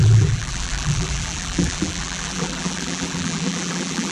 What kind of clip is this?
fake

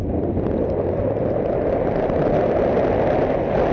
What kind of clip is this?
fake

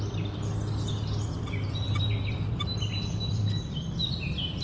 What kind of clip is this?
real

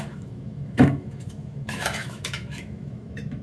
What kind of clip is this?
fake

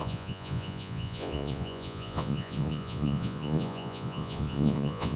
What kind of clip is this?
fake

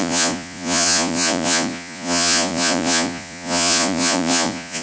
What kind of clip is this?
fake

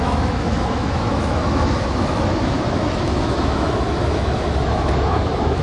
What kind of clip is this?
fake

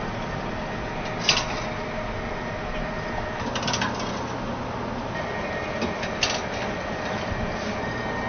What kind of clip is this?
real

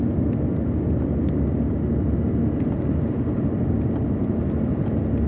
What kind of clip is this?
real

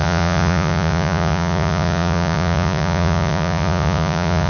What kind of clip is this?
fake